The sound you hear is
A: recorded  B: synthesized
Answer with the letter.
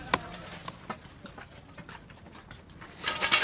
A